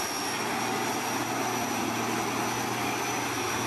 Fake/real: real